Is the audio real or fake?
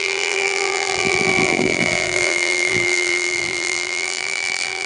fake